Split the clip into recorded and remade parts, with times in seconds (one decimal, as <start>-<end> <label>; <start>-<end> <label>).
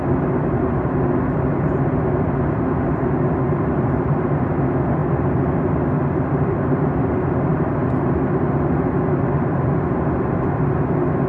0.0-11.3 recorded